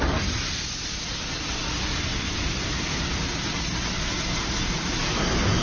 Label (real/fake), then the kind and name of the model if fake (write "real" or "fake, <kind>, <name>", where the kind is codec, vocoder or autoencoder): real